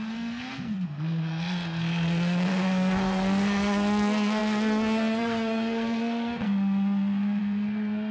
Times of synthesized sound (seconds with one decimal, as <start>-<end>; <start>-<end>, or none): 0.0-8.1